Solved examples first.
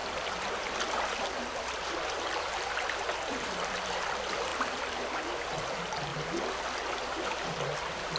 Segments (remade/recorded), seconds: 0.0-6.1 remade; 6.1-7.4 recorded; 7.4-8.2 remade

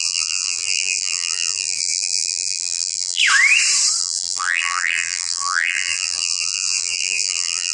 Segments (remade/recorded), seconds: 0.0-3.2 remade; 3.2-4.0 recorded; 4.0-7.7 remade

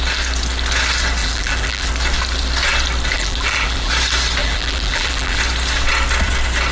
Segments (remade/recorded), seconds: 0.0-1.2 recorded; 1.2-1.9 remade; 1.9-3.1 recorded; 3.1-3.9 remade; 3.9-4.4 recorded; 4.4-5.4 remade; 5.4-6.7 recorded

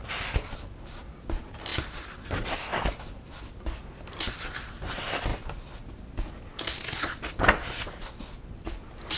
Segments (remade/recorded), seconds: 0.0-9.2 recorded

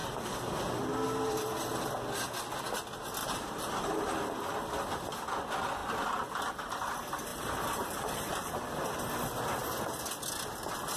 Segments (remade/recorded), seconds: 0.0-3.2 recorded; 3.2-4.1 remade; 4.1-7.3 recorded; 7.3-8.5 remade; 8.5-11.0 recorded